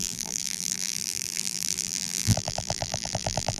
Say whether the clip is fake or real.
fake